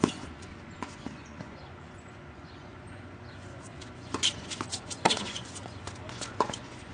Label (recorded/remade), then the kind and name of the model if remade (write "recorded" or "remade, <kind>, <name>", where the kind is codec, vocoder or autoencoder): remade, vocoder, Vocos